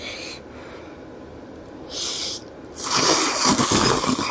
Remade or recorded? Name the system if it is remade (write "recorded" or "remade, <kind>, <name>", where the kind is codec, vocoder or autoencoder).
recorded